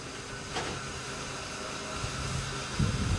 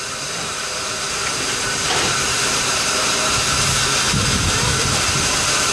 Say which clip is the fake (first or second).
second